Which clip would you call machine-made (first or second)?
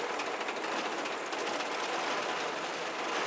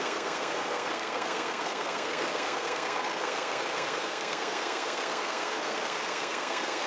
second